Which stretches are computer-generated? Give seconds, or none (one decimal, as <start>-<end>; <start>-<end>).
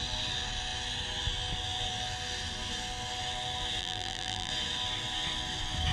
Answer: 3.8-4.5